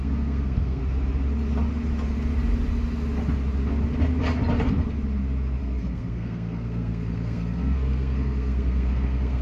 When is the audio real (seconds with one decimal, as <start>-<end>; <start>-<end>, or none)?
0.8-5.6